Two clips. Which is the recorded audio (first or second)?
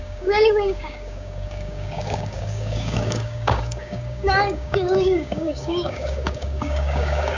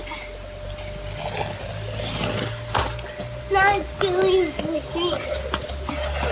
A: second